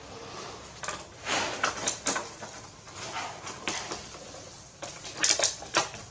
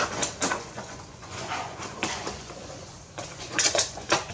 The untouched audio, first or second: first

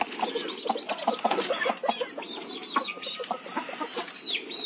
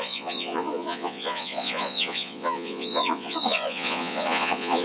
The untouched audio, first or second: first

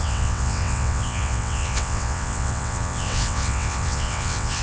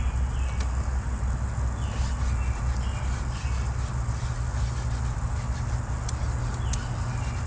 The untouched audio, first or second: second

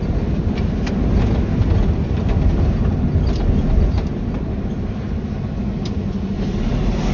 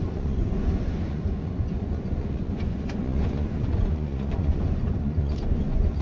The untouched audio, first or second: first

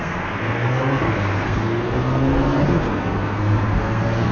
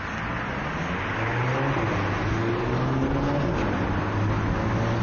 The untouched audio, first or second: second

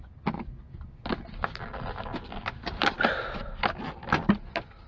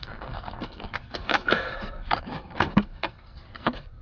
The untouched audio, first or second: first